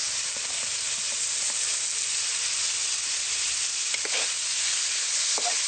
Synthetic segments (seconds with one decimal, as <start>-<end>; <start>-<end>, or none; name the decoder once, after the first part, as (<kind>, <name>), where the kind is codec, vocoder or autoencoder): none